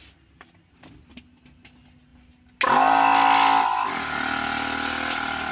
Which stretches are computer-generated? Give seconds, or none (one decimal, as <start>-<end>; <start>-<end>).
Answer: none